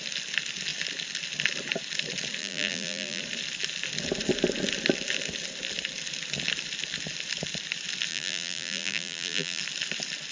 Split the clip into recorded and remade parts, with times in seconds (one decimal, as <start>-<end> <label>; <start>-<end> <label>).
0.0-2.4 recorded; 2.4-3.2 remade; 3.2-8.1 recorded; 8.1-9.6 remade; 9.6-10.3 recorded